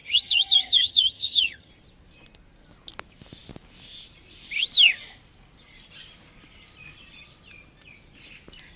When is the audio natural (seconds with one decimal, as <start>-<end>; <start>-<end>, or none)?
1.7-8.8